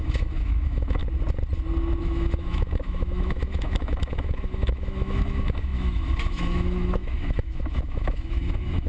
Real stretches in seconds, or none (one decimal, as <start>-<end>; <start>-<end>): 1.0-2.0